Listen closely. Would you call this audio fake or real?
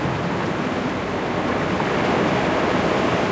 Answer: real